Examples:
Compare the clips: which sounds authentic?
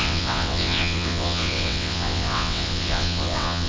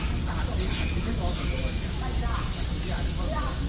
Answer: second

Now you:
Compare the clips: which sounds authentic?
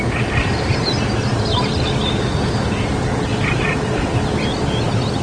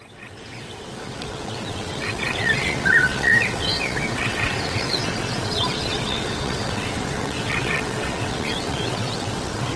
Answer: first